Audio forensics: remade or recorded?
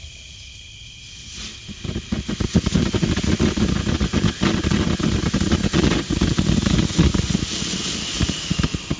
recorded